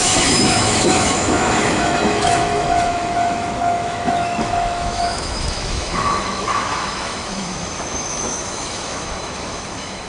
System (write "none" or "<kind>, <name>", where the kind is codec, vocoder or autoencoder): autoencoder, DAC-VAE